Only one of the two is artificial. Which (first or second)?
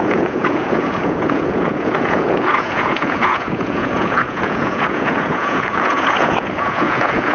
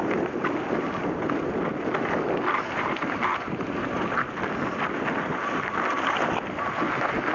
first